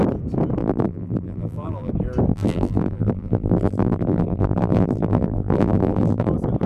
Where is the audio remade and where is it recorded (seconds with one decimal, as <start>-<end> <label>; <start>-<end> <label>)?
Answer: 0.0-0.6 recorded; 0.6-1.9 remade; 1.9-2.3 recorded; 2.3-6.3 remade; 6.3-6.7 recorded